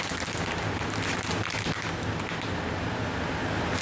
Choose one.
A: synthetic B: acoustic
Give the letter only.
B